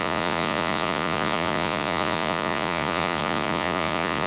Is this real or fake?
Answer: fake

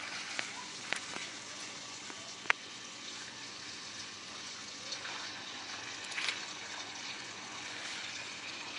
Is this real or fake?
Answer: fake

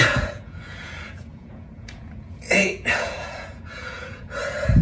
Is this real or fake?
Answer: fake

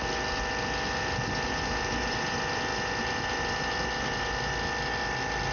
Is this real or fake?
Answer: real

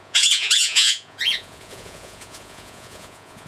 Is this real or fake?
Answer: fake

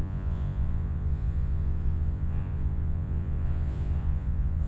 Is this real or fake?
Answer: fake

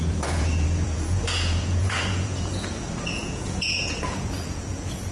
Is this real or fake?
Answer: fake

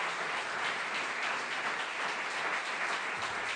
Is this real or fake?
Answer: real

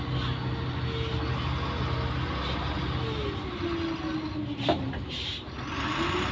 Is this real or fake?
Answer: real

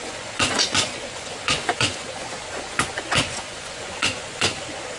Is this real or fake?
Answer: fake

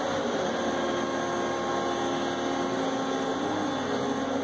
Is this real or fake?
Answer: real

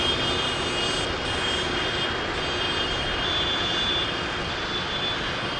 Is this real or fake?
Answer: real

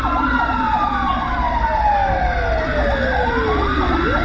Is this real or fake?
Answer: real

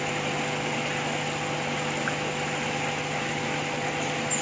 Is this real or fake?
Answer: real